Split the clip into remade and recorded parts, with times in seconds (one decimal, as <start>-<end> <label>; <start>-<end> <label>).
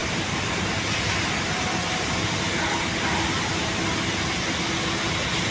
0.0-5.5 recorded